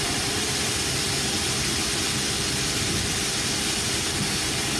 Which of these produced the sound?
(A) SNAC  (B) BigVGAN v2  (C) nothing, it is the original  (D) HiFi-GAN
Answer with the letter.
B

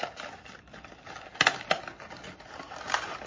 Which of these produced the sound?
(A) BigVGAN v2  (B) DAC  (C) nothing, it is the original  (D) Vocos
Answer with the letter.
A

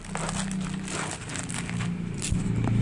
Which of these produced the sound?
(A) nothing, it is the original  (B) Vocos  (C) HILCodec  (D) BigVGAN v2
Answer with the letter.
A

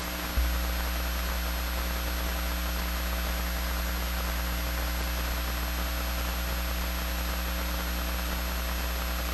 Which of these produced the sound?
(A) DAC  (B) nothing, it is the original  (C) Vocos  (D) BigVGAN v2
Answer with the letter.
B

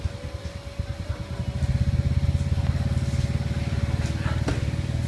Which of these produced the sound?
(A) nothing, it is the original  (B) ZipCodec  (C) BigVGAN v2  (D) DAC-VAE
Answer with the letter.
A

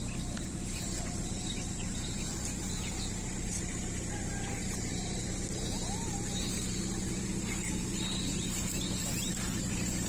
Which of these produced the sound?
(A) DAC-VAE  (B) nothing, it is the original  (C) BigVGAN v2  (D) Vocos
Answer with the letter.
C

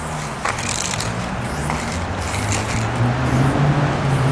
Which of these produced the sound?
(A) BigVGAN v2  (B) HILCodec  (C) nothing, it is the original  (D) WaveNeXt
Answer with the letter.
C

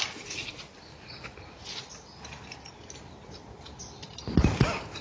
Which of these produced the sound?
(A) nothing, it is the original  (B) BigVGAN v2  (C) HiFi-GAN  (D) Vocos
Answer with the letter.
A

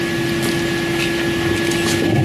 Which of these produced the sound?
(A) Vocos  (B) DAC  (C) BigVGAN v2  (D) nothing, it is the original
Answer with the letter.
D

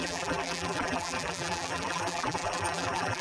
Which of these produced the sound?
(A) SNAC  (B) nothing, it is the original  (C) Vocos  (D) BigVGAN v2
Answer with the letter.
D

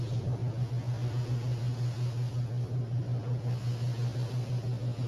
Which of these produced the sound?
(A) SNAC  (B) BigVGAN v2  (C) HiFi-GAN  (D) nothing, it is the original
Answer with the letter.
D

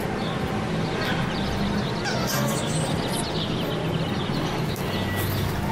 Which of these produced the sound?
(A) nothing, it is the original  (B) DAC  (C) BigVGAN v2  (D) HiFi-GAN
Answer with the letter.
A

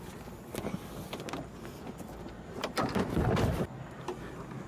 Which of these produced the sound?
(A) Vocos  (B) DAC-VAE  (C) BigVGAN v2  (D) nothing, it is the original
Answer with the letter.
D